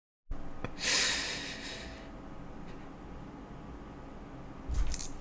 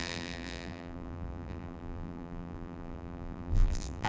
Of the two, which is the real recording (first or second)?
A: first